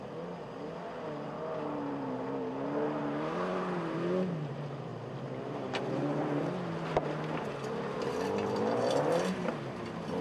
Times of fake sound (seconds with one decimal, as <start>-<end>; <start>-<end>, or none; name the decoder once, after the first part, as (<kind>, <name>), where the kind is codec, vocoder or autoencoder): none